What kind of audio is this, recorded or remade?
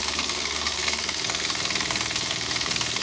remade